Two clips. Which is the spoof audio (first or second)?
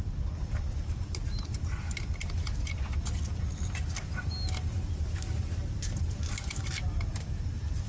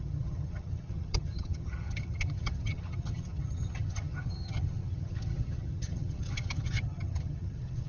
second